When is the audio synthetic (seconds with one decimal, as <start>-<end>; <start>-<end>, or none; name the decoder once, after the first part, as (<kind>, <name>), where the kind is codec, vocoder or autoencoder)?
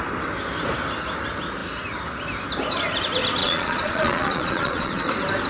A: 3.4-5.1 (vocoder, Vocos)